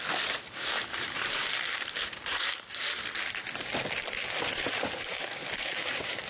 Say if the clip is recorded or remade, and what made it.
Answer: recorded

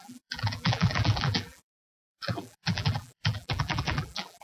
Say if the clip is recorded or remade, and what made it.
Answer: remade, vocoder, BigVGAN v2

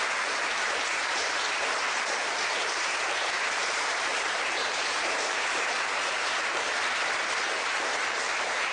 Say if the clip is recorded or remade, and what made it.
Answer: remade, vocoder, BigVGAN v2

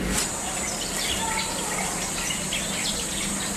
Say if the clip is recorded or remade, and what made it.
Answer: remade, vocoder, BigVGAN v2